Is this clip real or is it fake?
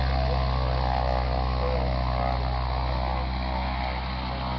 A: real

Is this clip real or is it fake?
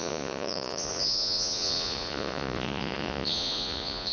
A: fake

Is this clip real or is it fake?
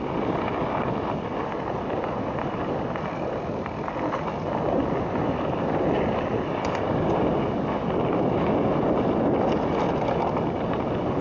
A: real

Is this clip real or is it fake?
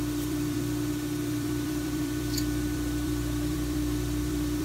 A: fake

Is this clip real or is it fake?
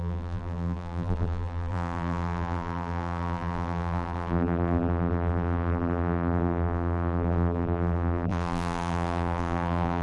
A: fake